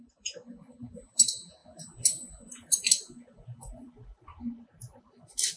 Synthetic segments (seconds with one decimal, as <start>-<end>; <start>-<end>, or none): 0.0-5.6